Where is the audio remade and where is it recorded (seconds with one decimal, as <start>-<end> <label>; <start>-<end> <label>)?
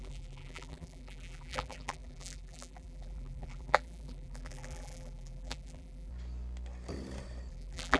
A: 0.0-6.1 remade; 6.1-7.5 recorded; 7.5-8.0 remade